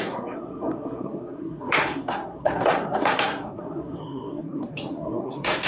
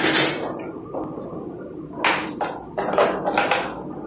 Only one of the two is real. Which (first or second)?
second